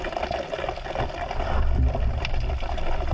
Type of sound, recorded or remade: recorded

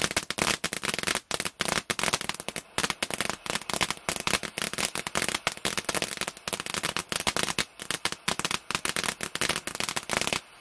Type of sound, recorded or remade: recorded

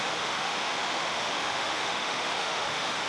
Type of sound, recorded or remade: remade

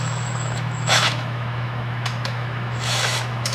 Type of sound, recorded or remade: remade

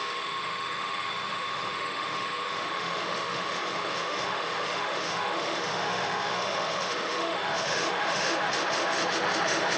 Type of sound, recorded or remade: remade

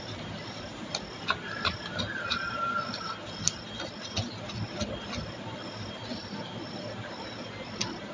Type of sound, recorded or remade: recorded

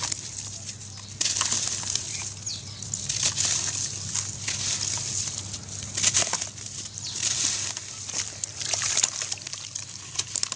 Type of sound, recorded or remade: recorded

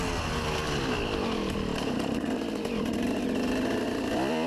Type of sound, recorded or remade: recorded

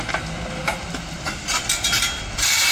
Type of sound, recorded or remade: recorded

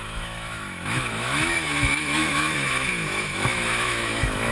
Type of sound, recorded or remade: remade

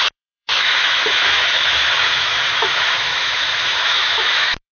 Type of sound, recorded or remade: remade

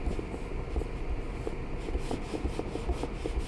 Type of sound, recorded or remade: recorded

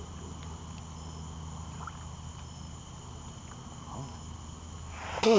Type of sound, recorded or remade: recorded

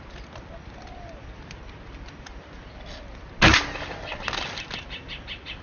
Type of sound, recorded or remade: recorded